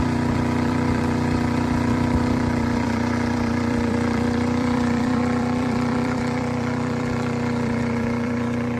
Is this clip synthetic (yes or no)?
yes